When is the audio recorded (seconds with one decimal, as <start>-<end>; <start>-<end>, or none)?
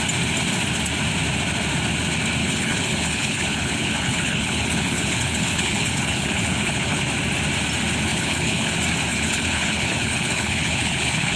0.0-2.4; 7.0-8.1; 8.7-9.1